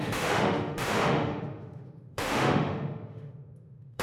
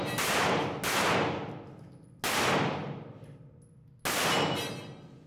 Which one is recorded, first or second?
second